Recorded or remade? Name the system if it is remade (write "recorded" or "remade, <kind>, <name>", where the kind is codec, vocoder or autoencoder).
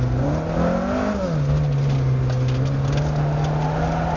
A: recorded